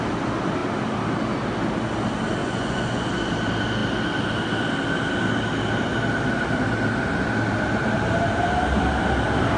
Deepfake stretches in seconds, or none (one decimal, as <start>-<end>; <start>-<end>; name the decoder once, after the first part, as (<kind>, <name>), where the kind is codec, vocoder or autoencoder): 2.4-3.1 (vocoder, Vocos)